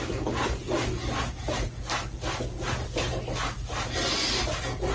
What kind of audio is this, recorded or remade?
recorded